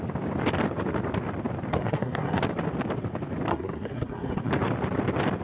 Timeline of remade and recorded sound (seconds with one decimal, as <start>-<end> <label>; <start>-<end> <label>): 0.0-1.7 recorded; 1.7-2.4 remade; 2.4-3.5 recorded; 3.5-4.5 remade; 4.5-5.4 recorded